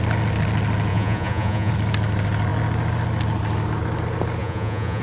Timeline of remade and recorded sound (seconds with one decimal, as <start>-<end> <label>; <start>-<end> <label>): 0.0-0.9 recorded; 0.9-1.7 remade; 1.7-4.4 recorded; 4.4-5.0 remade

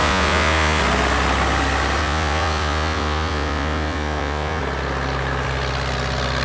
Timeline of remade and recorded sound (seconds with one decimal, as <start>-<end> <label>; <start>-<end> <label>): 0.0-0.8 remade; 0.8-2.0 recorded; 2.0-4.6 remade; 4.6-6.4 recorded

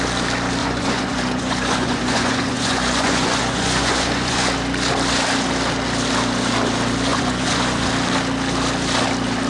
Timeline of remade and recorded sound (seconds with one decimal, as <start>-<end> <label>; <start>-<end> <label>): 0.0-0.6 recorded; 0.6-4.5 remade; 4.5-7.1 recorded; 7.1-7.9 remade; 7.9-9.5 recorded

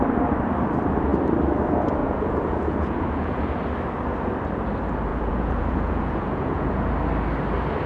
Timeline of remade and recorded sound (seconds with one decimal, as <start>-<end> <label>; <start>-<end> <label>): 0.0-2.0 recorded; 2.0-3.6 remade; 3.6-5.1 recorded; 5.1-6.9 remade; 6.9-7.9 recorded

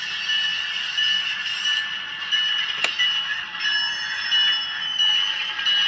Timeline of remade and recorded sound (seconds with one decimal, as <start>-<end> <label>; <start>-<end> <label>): 0.0-5.9 recorded

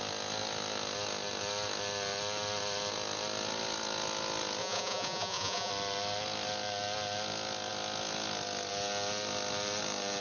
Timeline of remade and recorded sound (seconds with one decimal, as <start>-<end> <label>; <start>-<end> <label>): 0.0-4.6 recorded; 4.6-5.7 remade; 5.7-10.2 recorded

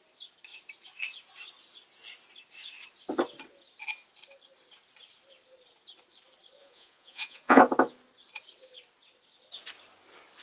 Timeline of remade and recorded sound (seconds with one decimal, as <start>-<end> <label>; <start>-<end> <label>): 0.0-6.6 recorded; 6.6-7.6 remade; 7.6-10.4 recorded

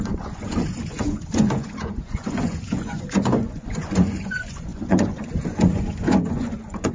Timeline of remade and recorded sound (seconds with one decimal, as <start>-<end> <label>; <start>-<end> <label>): 0.0-6.9 remade